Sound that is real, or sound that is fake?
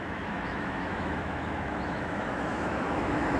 fake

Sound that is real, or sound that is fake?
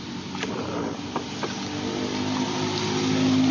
real